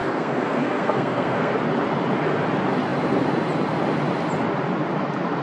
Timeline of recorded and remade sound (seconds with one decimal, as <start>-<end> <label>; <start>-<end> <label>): 0.0-1.5 remade; 1.5-5.4 recorded